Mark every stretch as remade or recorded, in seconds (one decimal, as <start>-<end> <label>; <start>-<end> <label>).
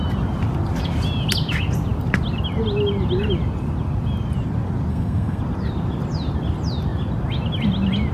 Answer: 0.0-4.9 recorded; 4.9-5.4 remade; 5.4-8.1 recorded